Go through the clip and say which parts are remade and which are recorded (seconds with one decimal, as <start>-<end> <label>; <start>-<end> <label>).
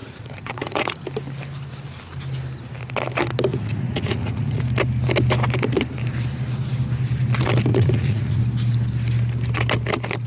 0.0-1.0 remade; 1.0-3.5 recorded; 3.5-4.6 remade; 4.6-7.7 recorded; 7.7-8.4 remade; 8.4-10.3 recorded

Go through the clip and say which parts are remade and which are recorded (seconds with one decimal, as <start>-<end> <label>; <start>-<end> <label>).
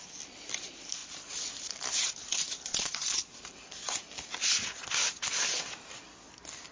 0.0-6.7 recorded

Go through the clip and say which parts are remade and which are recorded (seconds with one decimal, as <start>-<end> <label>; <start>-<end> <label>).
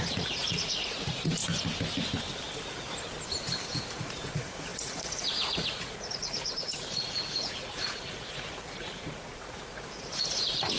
0.0-1.4 remade; 1.4-4.0 recorded; 4.0-10.8 remade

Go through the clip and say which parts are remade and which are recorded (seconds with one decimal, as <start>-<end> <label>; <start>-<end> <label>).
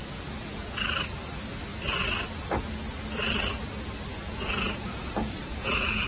0.0-0.8 remade; 0.8-4.1 recorded; 4.1-6.1 remade